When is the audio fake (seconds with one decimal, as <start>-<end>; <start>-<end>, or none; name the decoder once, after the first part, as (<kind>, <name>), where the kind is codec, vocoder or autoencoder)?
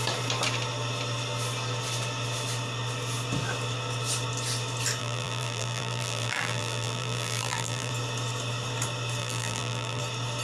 5.0-7.9 (vocoder, BigVGAN v2); 9.2-10.0